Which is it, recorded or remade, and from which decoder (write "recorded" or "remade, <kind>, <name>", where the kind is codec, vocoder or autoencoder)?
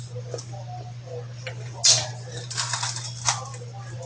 recorded